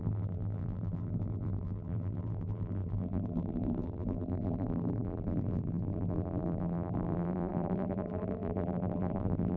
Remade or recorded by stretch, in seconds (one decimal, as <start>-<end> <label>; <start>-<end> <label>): 0.0-9.6 remade